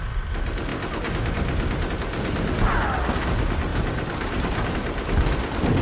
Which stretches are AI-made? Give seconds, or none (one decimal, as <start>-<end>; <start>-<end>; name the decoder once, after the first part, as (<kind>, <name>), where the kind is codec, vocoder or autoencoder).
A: 3.7-4.7 (vocoder, BigVGAN v2)